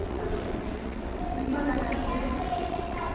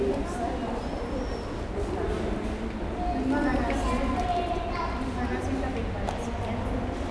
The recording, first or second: second